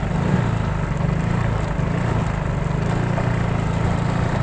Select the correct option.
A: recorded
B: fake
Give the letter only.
A